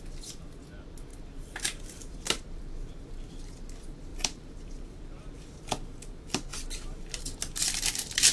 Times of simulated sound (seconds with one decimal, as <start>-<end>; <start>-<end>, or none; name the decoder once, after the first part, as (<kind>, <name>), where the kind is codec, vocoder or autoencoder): 1.1-3.1 (vocoder, BigVGAN v2); 4.1-5.5; 6.5-7.2